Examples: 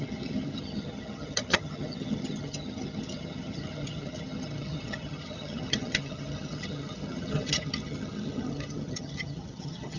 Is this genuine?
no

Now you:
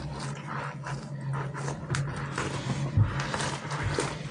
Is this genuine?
yes